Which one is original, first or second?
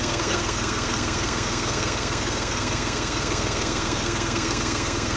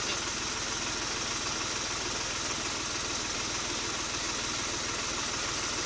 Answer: second